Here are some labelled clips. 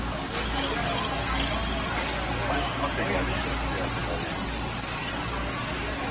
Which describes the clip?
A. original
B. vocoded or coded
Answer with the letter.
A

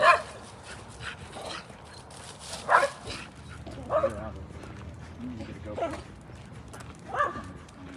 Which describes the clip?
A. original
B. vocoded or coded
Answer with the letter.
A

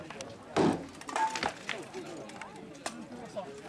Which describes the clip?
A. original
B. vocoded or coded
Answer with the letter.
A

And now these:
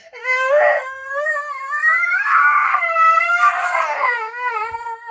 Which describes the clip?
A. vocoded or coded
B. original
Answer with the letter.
A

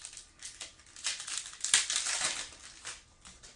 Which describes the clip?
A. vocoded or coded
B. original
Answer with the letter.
B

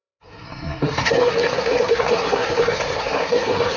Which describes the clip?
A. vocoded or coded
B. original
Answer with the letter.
A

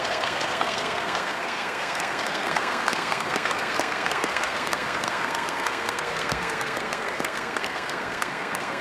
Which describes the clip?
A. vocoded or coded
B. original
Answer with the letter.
A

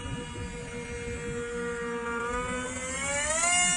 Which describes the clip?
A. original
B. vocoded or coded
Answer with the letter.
A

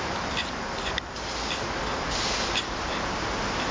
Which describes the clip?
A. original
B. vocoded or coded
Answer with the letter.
A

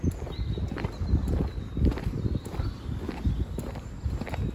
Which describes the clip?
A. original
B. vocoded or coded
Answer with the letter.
A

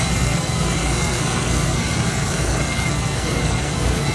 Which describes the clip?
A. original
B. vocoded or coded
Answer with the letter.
B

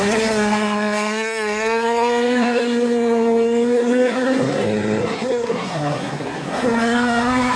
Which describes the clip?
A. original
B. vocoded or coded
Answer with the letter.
B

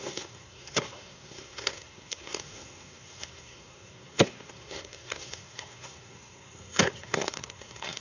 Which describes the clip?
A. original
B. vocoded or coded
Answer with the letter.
B